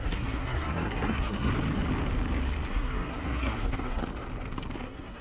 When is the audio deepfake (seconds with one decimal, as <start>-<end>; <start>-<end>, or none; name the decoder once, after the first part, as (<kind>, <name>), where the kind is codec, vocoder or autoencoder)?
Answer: 0.0-1.5 (codec, SNAC); 2.7-4.0; 4.8-5.2